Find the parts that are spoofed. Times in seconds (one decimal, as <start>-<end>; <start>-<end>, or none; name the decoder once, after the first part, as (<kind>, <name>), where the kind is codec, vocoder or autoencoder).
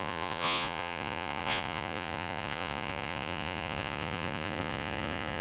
0.0-5.4 (vocoder, Vocos)